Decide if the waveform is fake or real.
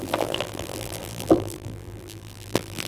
fake